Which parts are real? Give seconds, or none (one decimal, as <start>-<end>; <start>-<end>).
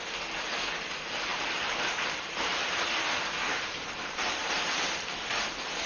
0.0-1.3; 4.8-5.9